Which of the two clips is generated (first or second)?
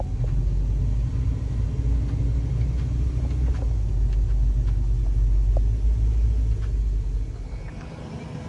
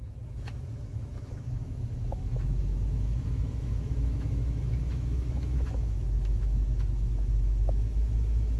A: second